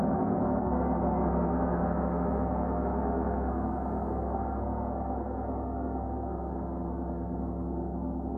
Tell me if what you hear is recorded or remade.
remade